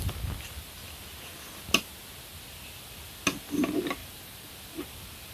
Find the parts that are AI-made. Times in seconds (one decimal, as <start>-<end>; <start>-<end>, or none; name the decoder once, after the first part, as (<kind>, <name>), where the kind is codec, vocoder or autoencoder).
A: 4.0-4.5 (vocoder, BigVGAN v2)